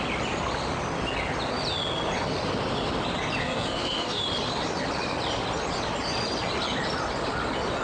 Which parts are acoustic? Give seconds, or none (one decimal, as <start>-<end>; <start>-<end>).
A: 0.0-3.4; 4.2-7.8